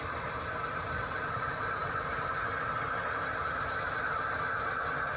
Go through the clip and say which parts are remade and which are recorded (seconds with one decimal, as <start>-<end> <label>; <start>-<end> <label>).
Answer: 0.0-5.2 recorded